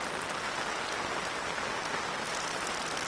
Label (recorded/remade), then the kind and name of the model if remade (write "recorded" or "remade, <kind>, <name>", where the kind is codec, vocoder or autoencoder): recorded